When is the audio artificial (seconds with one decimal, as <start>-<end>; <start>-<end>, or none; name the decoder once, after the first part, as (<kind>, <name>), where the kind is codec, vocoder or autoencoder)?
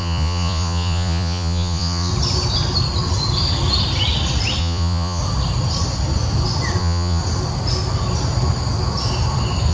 0.0-2.1 (vocoder, Vocos); 4.6-5.2; 6.8-7.2